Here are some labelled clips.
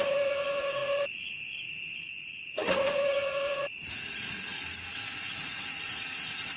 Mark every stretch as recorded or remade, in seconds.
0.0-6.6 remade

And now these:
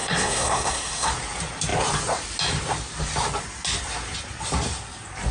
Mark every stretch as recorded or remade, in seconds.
0.0-1.1 remade; 1.1-5.3 recorded

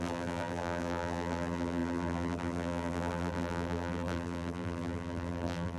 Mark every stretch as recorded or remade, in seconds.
0.0-5.8 remade

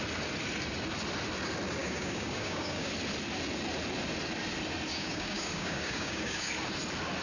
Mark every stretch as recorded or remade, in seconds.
0.0-1.8 recorded; 1.8-2.9 remade; 2.9-4.9 recorded; 4.9-6.5 remade; 6.5-7.2 recorded

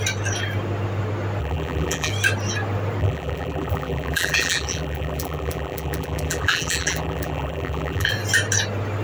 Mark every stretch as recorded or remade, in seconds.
0.0-1.4 recorded; 1.4-2.1 remade; 2.1-3.0 recorded; 3.0-8.1 remade; 8.1-9.0 recorded